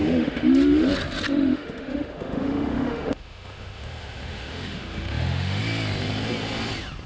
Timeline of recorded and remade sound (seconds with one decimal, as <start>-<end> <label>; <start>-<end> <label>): 0.0-0.9 remade; 0.9-1.3 recorded; 1.3-5.6 remade; 5.6-7.1 recorded